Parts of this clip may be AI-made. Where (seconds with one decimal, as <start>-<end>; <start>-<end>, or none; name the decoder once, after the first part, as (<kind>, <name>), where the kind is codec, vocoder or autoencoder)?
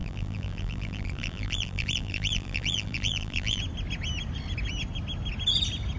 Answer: 0.0-3.6 (vocoder, BigVGAN v2)